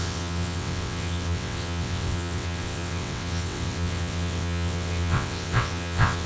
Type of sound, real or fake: fake